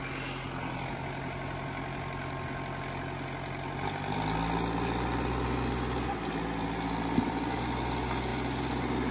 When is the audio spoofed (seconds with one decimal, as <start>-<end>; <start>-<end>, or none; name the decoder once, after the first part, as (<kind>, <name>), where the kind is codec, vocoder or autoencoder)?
none